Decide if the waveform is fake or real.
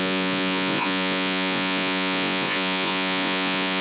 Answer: fake